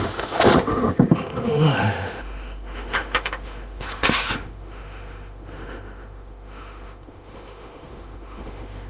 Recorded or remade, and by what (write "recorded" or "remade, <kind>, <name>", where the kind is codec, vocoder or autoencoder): remade, autoencoder, DAC-VAE